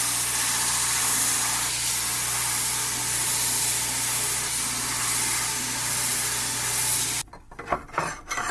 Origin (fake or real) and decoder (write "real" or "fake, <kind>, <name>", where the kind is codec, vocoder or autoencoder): real